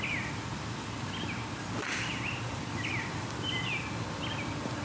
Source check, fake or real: real